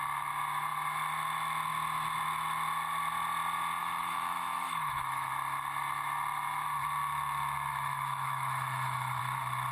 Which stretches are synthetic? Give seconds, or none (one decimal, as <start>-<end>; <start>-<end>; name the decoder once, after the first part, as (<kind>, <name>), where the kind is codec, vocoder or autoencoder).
3.8-5.3 (autoencoder, DAC-VAE); 7.7-9.2